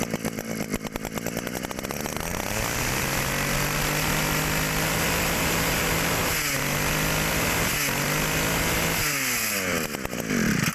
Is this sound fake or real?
real